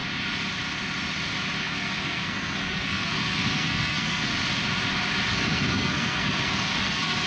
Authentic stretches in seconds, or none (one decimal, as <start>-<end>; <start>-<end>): 0.0-1.6; 4.3-5.3